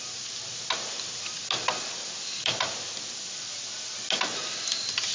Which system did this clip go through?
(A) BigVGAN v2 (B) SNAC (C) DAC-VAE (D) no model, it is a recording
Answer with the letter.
D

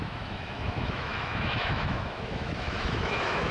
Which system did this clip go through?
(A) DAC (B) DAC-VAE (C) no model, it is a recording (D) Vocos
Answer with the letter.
B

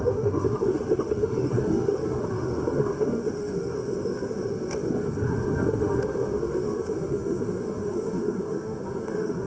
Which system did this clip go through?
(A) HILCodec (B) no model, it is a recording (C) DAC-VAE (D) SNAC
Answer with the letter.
C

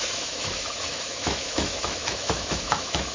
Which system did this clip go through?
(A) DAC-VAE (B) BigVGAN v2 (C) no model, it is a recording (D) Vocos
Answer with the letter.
A